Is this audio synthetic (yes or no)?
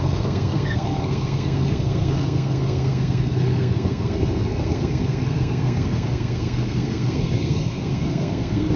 yes